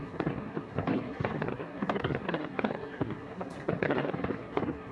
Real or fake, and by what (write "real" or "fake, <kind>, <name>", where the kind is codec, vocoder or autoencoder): fake, codec, SNAC